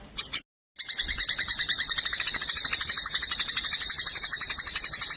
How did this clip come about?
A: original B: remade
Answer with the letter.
A